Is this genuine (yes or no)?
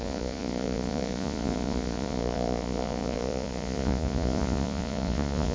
no